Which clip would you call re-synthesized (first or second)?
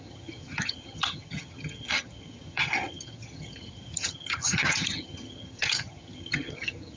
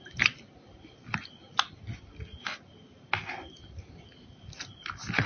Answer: first